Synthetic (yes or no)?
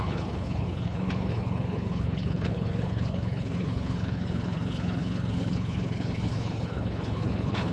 yes